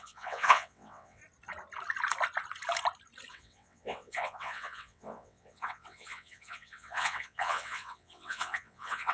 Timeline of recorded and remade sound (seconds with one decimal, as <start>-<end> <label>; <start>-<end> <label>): 0.0-1.2 remade; 1.2-3.3 recorded; 3.3-9.1 remade